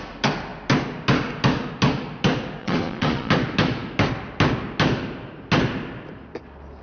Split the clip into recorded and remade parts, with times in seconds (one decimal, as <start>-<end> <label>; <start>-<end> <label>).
0.0-2.6 recorded; 2.6-3.3 remade; 3.3-6.8 recorded